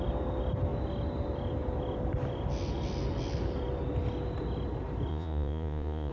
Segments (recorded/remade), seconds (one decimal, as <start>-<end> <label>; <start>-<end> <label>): 0.0-5.1 recorded; 5.1-6.1 remade